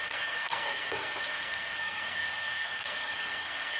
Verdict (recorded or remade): remade